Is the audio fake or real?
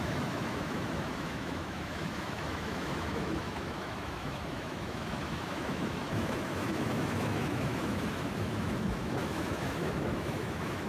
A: fake